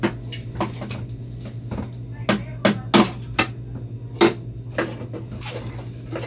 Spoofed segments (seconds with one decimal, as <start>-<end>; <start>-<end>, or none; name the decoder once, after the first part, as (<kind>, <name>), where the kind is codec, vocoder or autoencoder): none